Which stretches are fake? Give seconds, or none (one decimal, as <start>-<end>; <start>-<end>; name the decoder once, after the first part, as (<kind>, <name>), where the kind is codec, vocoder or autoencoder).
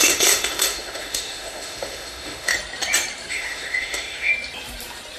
0.0-2.5 (autoencoder, DAC-VAE); 3.3-4.3